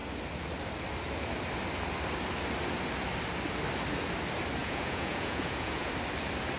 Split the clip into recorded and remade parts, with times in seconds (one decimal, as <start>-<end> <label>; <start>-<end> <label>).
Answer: 0.0-4.6 recorded; 4.6-5.9 remade; 5.9-6.6 recorded